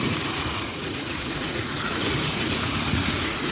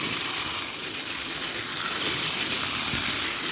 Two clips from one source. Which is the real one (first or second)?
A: second